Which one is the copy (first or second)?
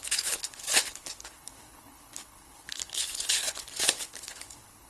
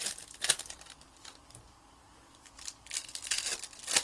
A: first